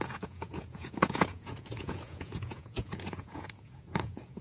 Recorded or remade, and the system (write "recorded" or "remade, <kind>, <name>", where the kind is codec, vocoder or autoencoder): remade, vocoder, Vocos